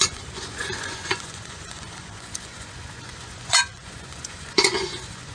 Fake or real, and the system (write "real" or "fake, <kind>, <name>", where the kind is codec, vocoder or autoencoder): fake, vocoder, Vocos